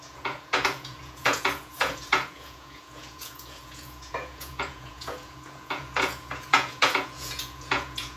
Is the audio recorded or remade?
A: remade